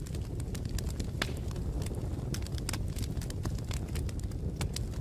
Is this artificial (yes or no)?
no